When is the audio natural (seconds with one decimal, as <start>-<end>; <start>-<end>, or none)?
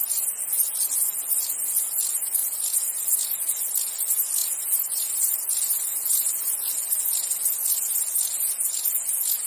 none